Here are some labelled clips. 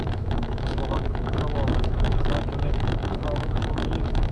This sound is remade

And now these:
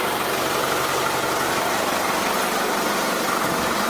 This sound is recorded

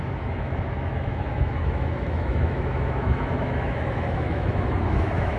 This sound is remade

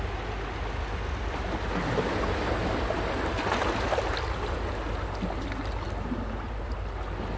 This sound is recorded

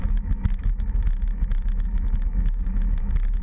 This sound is remade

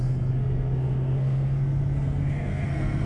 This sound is remade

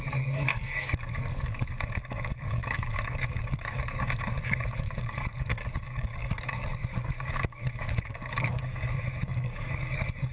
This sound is remade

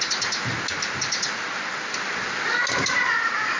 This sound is recorded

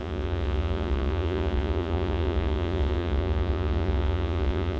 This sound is remade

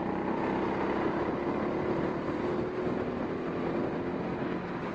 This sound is recorded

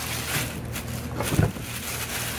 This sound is recorded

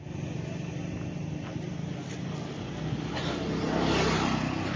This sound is recorded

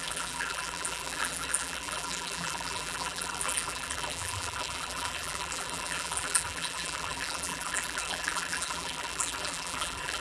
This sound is remade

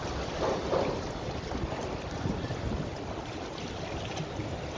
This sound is recorded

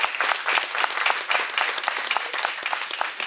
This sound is remade